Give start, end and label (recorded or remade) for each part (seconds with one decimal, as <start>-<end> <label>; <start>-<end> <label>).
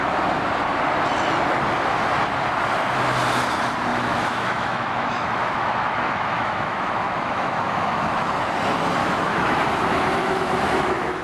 0.0-3.9 recorded; 3.9-8.3 remade; 8.3-9.0 recorded; 9.0-9.6 remade; 9.6-10.2 recorded; 10.2-11.2 remade